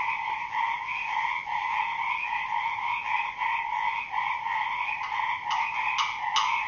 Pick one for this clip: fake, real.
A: real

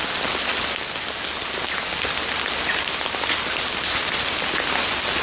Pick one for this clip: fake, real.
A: real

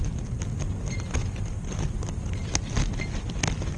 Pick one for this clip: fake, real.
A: real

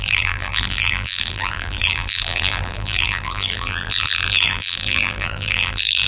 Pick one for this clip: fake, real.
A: fake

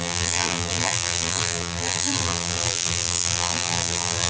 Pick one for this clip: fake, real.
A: fake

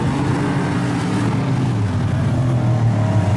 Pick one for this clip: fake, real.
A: real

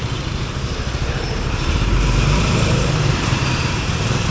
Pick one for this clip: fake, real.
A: fake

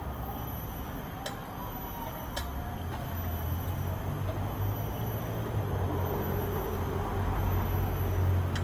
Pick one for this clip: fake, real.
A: real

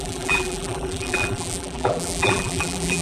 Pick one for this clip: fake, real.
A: fake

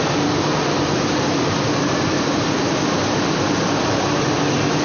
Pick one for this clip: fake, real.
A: fake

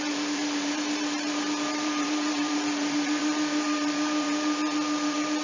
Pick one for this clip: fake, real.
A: fake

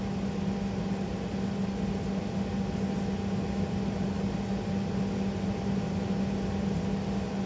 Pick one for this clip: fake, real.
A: real